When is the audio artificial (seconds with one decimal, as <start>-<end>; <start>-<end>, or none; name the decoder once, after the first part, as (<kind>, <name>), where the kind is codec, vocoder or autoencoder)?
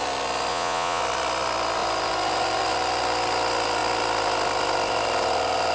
0.5-1.0 (vocoder, Vocos)